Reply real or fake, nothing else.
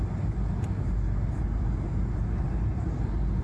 real